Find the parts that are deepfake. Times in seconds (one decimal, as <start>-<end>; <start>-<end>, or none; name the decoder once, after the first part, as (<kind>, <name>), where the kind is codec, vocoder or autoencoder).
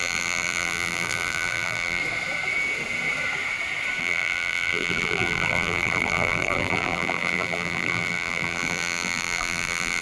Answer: 0.0-2.0 (vocoder, BigVGAN v2); 4.0-10.0